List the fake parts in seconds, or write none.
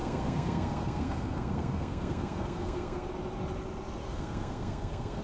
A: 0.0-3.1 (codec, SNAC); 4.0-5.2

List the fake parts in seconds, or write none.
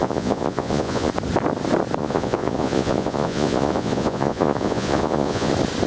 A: 0.0-1.1 (vocoder, Vocos); 2.0-5.5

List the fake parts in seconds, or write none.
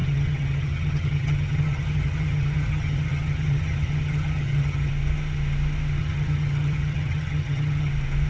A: 0.0-4.9 (vocoder, HiFi-GAN); 6.0-7.9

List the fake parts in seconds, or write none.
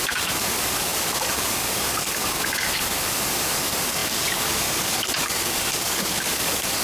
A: 0.0-6.8 (codec, DAC)